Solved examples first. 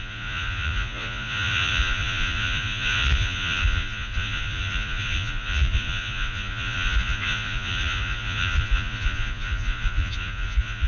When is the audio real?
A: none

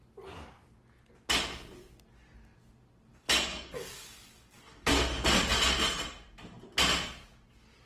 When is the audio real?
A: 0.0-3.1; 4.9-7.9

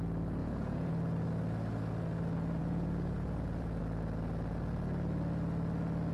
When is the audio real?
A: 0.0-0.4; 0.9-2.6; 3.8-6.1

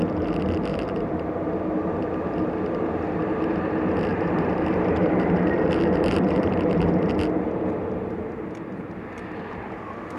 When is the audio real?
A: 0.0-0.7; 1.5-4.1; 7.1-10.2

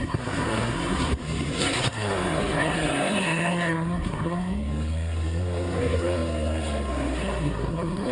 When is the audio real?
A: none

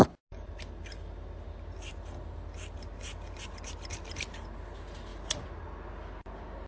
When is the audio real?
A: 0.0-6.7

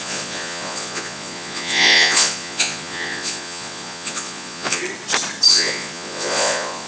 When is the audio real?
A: 4.8-5.5